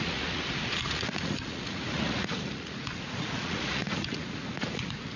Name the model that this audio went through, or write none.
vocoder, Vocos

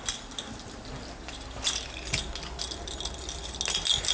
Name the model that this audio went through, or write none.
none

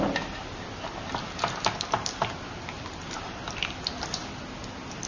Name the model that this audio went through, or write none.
none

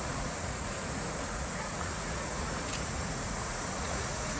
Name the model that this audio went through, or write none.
vocoder, Vocos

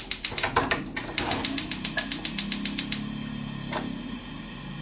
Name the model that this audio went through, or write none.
none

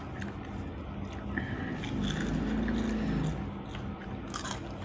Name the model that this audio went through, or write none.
none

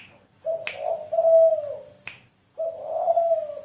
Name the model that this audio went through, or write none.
none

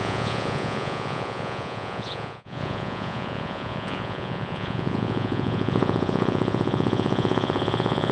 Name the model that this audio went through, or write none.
vocoder, Vocos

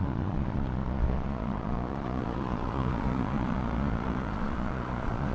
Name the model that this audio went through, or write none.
vocoder, Vocos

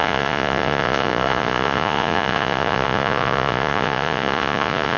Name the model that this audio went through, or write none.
vocoder, Vocos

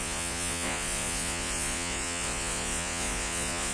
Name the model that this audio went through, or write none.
vocoder, Vocos